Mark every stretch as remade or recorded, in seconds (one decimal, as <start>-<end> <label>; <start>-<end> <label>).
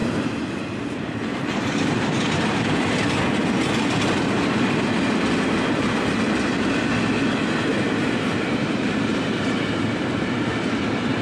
0.0-2.6 remade; 2.6-7.7 recorded; 7.7-10.3 remade; 10.3-11.2 recorded